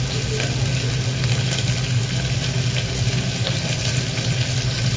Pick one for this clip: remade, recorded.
recorded